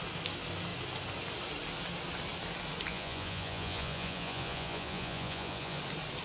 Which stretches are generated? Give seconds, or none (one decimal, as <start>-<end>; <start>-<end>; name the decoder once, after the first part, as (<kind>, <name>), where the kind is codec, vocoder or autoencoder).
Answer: 2.9-5.8 (vocoder, Vocos)